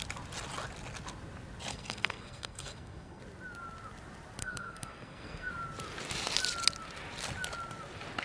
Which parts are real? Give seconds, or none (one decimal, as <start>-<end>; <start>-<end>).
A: 0.0-1.7; 3.2-4.4; 5.5-8.2